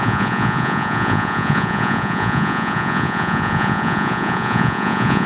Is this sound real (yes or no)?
no